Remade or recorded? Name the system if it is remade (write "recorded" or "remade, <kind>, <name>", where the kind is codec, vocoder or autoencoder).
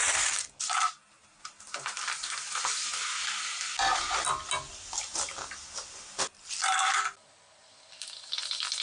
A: recorded